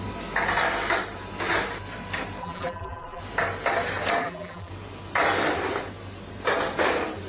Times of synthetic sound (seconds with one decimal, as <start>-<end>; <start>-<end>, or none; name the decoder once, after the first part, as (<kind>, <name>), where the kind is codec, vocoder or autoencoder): 2.4-3.2 (vocoder, BigVGAN v2); 4.2-4.7

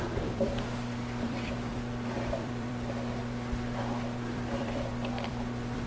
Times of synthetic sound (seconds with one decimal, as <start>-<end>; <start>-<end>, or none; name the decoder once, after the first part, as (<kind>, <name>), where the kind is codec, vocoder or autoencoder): 0.0-5.9 (vocoder, BigVGAN v2)

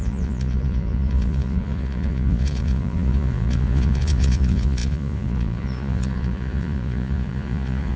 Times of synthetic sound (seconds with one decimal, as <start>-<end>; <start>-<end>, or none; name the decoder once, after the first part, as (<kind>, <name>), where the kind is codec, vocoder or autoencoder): 0.0-8.0 (vocoder, Vocos)

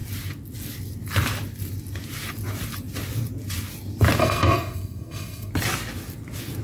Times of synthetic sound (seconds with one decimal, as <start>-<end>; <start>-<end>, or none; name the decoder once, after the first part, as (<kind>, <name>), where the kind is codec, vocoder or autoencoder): 4.2-5.5 (codec, SNAC)

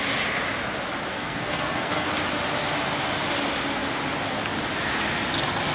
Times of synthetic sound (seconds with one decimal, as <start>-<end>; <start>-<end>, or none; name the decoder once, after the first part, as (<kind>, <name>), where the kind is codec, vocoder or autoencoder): 1.1-2.1 (codec, SNAC)

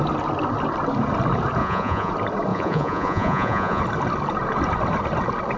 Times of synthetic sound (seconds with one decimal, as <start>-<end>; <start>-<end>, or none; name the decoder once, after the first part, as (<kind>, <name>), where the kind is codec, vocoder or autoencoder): 1.6-2.1 (vocoder, Vocos); 2.5-3.8